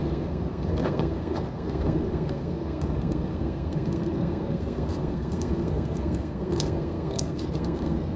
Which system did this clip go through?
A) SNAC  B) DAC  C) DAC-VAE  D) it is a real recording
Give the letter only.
A